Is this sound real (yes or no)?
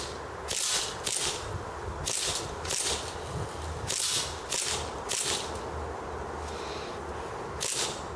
yes